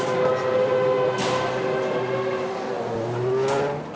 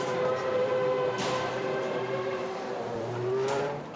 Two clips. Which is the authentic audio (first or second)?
first